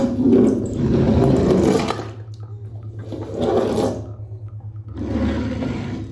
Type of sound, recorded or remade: recorded